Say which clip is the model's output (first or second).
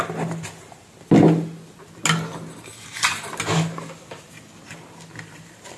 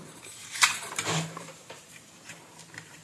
second